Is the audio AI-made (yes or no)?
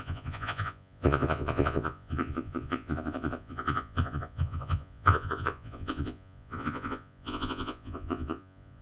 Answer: yes